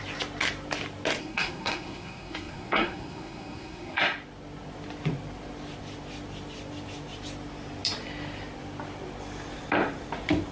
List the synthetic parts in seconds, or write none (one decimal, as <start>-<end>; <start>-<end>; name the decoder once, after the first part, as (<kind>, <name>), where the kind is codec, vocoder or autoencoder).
1.2-4.0 (codec, SNAC)